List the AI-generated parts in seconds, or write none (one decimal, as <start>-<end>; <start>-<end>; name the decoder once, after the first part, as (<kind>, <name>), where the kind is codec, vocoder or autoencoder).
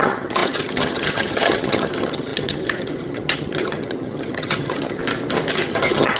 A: 0.0-5.0 (vocoder, HiFi-GAN); 5.5-6.2